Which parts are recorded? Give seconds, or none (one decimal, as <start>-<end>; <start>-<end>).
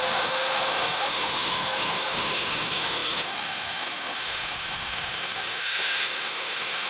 none